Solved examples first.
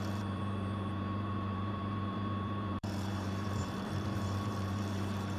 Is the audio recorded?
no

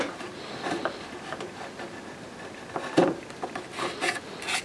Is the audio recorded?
yes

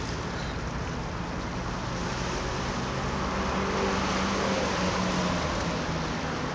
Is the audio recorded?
yes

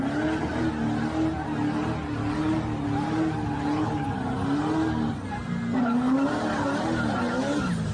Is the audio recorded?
yes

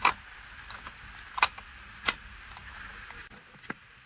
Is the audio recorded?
yes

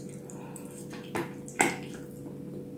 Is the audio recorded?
yes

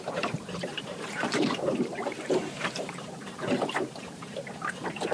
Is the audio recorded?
no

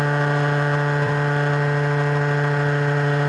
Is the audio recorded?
no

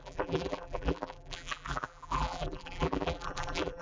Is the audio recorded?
no